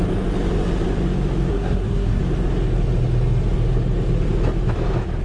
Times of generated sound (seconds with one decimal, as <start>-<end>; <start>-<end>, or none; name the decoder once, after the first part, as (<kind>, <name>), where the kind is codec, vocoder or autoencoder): 1.5-2.2 (codec, SNAC)